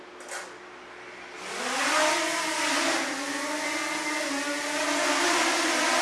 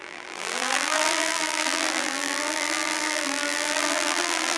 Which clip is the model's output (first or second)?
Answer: second